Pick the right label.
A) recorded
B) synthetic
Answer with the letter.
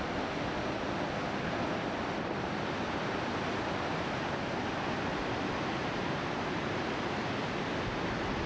A